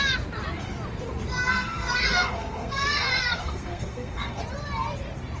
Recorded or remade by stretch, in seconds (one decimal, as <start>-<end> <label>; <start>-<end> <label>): 0.0-1.3 recorded; 1.3-4.4 remade; 4.4-5.4 recorded